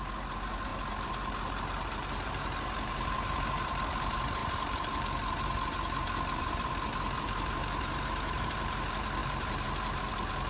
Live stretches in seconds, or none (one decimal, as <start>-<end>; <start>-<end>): none